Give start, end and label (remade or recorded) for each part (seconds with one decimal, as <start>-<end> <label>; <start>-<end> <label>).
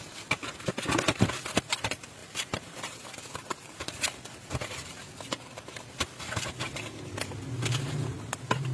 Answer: 0.0-2.2 recorded; 2.2-6.4 remade; 6.4-8.7 recorded